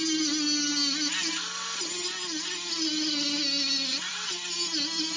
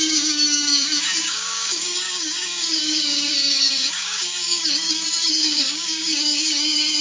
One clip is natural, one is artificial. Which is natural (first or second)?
first